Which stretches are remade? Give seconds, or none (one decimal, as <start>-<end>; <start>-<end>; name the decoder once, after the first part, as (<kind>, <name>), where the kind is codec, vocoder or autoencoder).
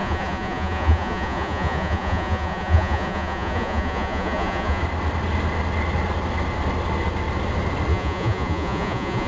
0.0-4.8 (vocoder, Vocos); 7.9-9.3